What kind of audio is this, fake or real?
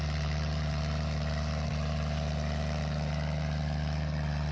real